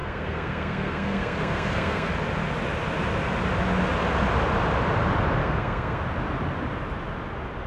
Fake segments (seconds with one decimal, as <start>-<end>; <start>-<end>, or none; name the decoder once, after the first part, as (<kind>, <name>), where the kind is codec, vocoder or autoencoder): 0.0-2.1 (codec, SNAC); 5.4-6.0